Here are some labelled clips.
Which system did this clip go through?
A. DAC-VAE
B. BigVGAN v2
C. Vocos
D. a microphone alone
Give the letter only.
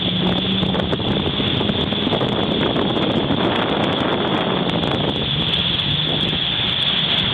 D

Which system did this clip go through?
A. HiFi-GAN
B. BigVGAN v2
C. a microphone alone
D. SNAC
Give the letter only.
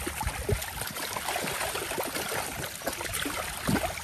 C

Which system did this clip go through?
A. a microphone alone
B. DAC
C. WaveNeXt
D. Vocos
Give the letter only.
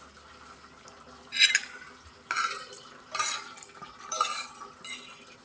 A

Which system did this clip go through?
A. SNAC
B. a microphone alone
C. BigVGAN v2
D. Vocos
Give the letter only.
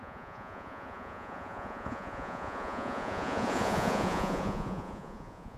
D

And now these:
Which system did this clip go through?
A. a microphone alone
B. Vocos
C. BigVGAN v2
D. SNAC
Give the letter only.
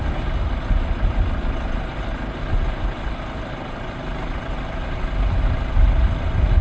A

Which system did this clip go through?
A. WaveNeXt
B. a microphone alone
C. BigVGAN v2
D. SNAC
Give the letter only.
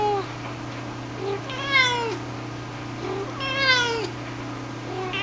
B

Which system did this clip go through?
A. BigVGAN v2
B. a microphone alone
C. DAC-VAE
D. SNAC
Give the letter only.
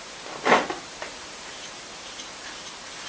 A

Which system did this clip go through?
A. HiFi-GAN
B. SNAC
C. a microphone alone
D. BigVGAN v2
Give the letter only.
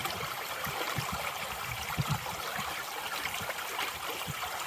C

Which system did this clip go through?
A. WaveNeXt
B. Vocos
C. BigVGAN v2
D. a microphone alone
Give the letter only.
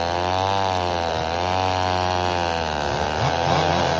D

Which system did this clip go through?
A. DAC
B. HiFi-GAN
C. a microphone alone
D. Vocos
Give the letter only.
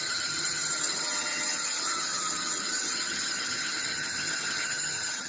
B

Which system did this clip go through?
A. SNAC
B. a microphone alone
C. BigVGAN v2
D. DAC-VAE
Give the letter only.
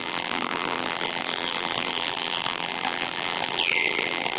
C